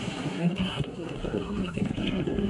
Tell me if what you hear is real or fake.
fake